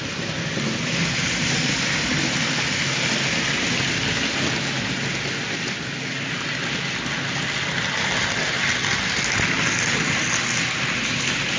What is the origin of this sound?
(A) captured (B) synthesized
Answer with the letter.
A